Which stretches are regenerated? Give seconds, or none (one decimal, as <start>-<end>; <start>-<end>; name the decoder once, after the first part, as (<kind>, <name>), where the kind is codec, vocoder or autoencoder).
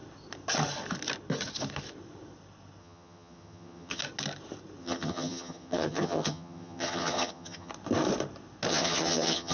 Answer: 2.8-4.0 (vocoder, HiFi-GAN); 4.8-7.7; 8.7-9.5